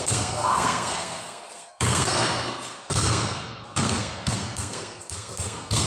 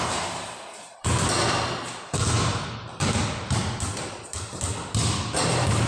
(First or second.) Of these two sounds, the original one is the second